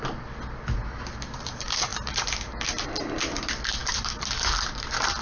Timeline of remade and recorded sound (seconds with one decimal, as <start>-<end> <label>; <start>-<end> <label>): 0.0-1.9 recorded; 1.9-2.9 remade; 2.9-5.2 recorded